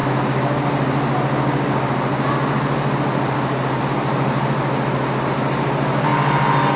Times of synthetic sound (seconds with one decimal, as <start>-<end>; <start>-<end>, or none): none